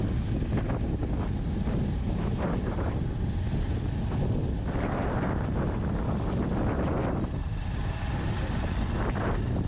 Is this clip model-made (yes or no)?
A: no